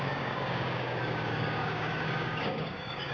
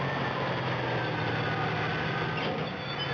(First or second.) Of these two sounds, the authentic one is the second